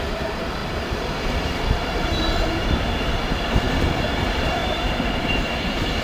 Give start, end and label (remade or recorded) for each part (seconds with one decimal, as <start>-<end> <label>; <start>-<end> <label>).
0.0-4.6 remade; 4.6-5.2 recorded; 5.2-6.0 remade